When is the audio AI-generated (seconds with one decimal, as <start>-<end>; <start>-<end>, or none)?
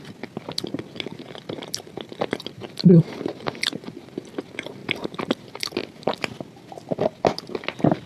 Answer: 4.8-6.1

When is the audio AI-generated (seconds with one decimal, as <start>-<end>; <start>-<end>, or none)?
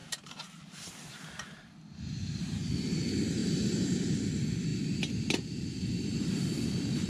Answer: 0.0-0.9; 3.4-4.2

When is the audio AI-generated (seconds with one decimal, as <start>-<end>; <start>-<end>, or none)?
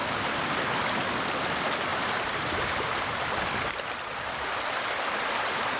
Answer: 0.0-0.7; 1.9-3.2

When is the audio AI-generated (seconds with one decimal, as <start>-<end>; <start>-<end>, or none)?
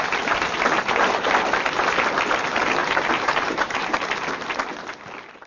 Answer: 2.8-3.9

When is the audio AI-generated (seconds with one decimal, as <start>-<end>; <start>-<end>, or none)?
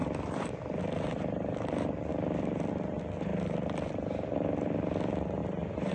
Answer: 0.0-0.8; 2.1-2.7; 3.3-4.1